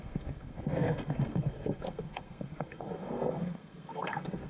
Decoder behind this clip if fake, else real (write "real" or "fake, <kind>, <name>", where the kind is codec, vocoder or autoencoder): fake, codec, SNAC